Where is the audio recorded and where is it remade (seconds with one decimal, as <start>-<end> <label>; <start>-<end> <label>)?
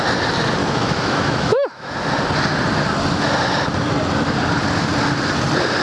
0.0-0.6 recorded; 0.6-1.9 remade; 1.9-5.8 recorded